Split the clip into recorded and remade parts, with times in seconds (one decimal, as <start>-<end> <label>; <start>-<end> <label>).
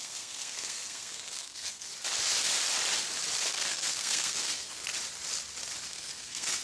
0.0-1.9 remade; 1.9-3.5 recorded; 3.5-4.8 remade; 4.8-5.9 recorded; 5.9-6.6 remade